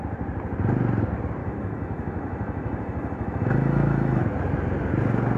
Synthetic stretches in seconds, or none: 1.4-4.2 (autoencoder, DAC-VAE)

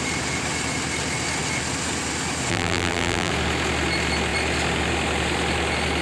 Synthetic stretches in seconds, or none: 2.5-3.3 (vocoder, BigVGAN v2)